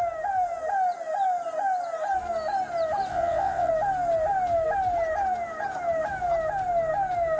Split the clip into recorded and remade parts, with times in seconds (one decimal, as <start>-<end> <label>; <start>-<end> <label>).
0.0-3.1 recorded; 3.1-3.7 remade; 3.7-7.4 recorded